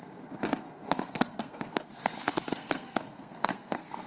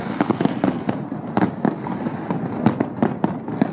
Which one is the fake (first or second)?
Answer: first